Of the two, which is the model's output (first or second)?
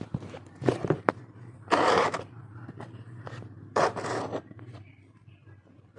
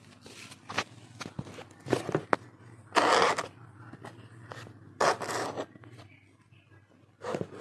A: first